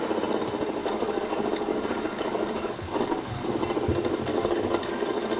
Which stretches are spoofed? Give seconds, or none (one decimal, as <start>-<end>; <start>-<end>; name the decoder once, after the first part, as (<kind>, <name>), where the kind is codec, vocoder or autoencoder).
0.8-3.5 (codec, DAC); 4.3-4.9